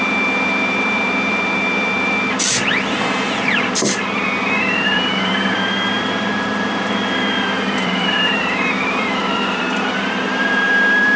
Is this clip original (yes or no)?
no